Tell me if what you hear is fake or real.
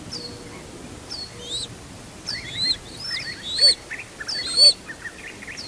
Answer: real